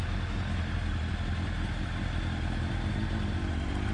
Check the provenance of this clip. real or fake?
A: real